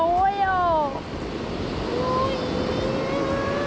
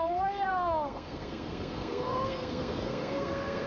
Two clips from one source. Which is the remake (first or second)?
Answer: second